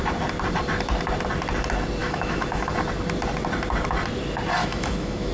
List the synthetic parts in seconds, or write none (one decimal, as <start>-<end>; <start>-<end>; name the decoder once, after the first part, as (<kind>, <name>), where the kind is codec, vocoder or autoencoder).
2.0-2.7 (autoencoder, DAC-VAE); 4.6-5.3